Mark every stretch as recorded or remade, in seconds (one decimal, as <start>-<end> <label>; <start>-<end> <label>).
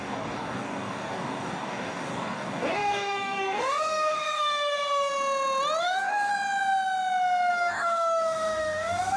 0.0-5.1 remade; 5.1-5.8 recorded; 5.8-6.3 remade; 6.3-7.5 recorded; 7.5-9.2 remade